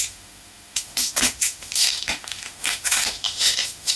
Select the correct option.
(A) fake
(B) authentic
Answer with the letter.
A